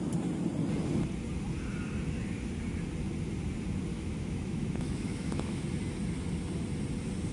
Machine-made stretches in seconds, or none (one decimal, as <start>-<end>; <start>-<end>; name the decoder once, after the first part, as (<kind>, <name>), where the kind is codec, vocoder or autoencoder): 3.9-5.6 (autoencoder, DAC-VAE)